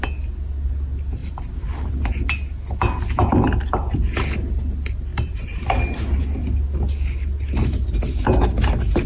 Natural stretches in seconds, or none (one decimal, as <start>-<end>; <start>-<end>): 0.0-1.2; 1.9-5.1; 5.6-9.1